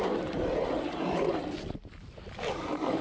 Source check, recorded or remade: recorded